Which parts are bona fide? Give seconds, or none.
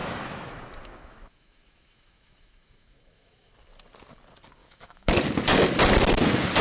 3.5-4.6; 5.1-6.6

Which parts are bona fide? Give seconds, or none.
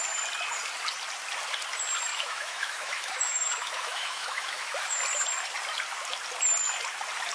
0.0-2.1; 5.0-7.3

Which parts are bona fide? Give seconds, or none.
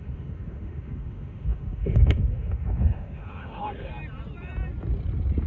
3.9-5.5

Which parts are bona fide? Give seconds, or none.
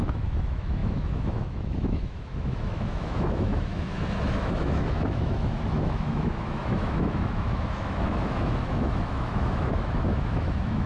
none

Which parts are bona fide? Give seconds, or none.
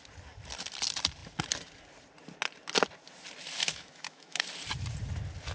0.0-3.6; 4.4-5.5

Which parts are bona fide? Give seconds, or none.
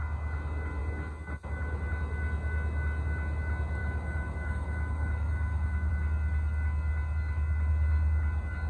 0.0-3.8; 5.9-8.7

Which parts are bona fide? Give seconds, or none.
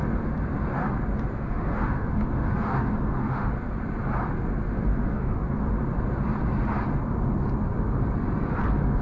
0.0-1.3; 3.5-4.9; 5.6-9.0